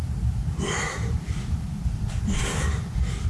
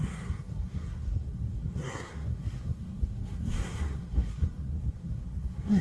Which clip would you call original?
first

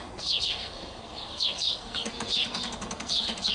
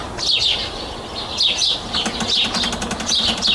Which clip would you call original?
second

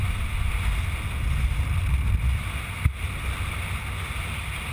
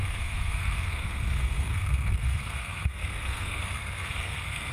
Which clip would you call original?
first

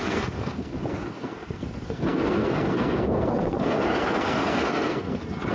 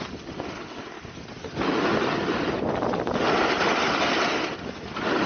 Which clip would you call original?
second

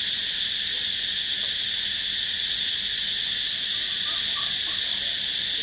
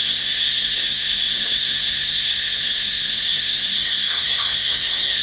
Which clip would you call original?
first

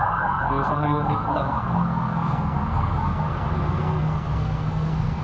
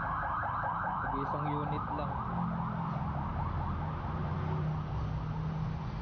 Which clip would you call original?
second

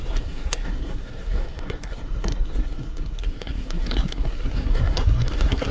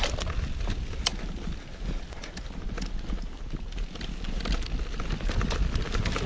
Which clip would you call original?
second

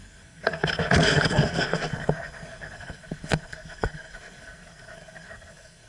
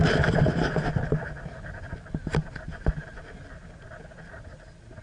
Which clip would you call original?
second